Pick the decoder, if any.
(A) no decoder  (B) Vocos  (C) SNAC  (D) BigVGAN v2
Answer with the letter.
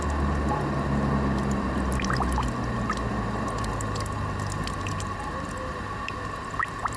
A